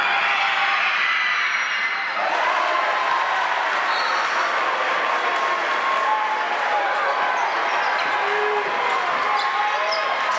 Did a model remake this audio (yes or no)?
no